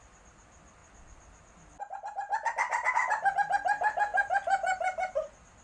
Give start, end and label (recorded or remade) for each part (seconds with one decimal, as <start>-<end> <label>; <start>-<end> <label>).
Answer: 0.0-5.6 recorded